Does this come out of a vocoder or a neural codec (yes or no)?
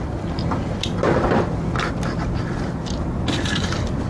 yes